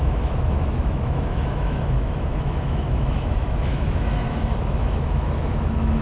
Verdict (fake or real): fake